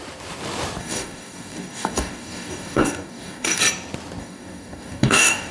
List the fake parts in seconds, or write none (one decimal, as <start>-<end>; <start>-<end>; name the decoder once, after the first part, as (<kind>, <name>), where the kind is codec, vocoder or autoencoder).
0.8-3.6 (codec, DAC); 4.2-5.5